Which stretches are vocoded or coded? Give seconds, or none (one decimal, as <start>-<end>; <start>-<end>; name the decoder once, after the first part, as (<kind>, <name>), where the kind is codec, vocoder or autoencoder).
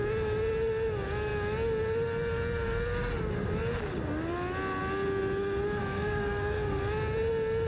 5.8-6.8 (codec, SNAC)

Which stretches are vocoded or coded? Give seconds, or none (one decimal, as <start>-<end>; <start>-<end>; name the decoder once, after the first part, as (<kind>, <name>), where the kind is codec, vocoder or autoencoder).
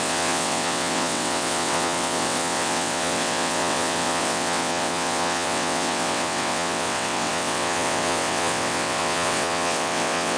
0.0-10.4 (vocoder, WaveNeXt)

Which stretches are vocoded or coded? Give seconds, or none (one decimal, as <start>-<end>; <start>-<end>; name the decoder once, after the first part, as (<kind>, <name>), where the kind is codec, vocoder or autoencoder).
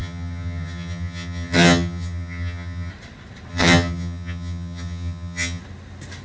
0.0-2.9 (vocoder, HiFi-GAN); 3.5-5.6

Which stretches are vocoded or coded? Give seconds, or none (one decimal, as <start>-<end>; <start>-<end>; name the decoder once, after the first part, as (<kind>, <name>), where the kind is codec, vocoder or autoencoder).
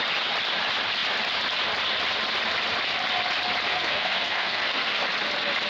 3.7-5.0 (codec, SNAC)